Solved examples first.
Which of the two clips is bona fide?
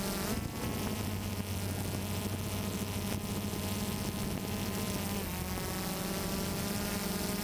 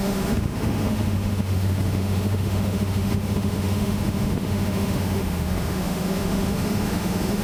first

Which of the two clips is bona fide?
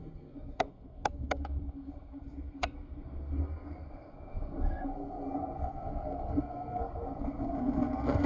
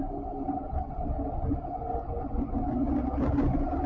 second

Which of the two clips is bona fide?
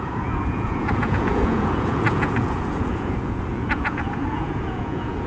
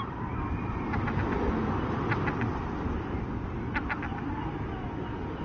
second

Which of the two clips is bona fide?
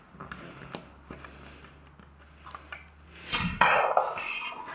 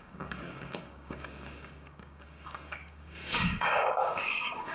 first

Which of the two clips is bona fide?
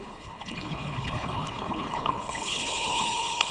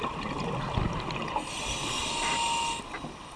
second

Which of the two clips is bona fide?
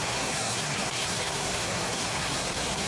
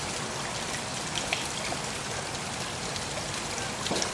second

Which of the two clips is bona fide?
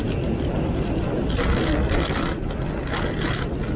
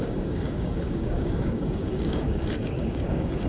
first